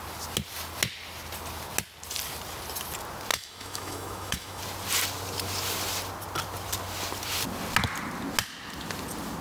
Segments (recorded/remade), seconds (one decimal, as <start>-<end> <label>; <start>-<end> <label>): 0.0-3.3 recorded; 3.3-4.6 remade; 4.6-9.4 recorded